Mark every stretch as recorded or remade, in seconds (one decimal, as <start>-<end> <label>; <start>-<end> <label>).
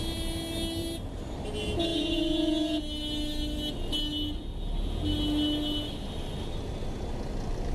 0.0-0.8 recorded; 0.8-1.3 remade; 1.3-7.7 recorded